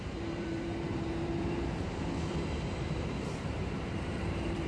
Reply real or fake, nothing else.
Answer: fake